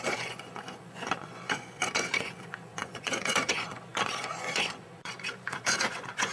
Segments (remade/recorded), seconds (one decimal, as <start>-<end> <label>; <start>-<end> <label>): 0.0-6.3 remade